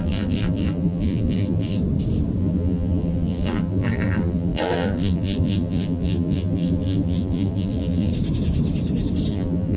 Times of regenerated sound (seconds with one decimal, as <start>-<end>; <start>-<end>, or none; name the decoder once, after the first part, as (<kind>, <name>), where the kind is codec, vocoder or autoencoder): 0.0-1.8 (vocoder, BigVGAN v2); 2.4-8.1; 9.3-9.8